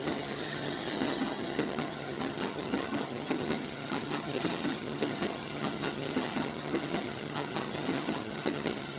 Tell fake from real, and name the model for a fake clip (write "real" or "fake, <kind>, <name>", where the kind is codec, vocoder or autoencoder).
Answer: fake, vocoder, HiFi-GAN